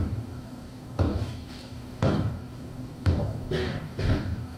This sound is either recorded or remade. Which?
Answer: remade